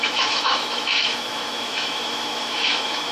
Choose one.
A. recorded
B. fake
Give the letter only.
B